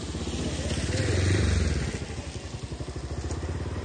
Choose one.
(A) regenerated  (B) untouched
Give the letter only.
B